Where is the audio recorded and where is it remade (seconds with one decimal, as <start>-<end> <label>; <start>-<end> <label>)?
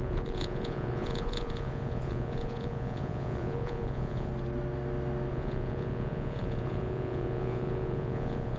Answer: 0.0-4.3 remade; 4.3-5.3 recorded; 5.3-8.6 remade